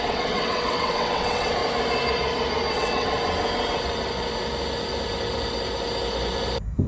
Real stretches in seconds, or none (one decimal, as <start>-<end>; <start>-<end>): 1.6-2.7; 3.2-6.9